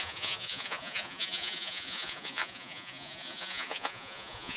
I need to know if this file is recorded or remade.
remade